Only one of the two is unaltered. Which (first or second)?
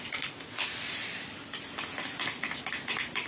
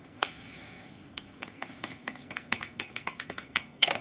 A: first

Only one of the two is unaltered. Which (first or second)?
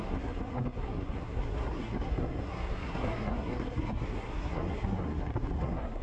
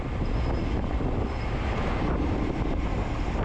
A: second